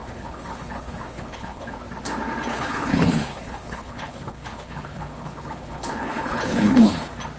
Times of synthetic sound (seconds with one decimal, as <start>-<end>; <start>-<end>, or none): 0.0-1.8; 2.5-6.9